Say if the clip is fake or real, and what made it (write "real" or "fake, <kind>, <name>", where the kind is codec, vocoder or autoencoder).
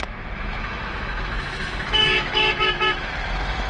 fake, autoencoder, DAC-VAE